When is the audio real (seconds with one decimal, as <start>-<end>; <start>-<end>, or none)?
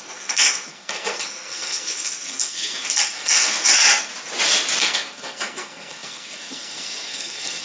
4.1-4.8